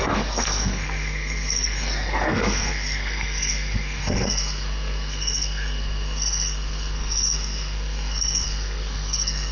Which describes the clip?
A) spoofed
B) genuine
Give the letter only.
A